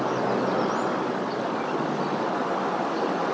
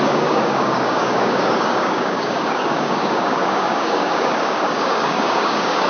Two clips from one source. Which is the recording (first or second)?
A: first